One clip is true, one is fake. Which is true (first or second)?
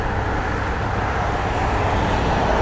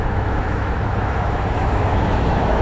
first